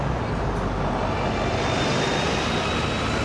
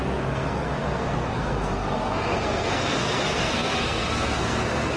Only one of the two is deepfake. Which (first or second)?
second